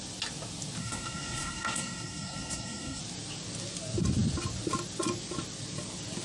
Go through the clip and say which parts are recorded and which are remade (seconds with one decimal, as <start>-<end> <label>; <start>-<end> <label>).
0.0-0.8 recorded; 0.8-3.0 remade; 3.0-6.2 recorded